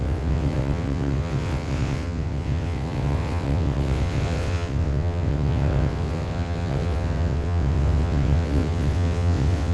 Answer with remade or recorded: remade